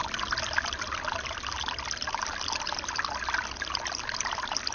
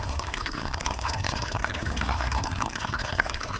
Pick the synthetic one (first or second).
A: second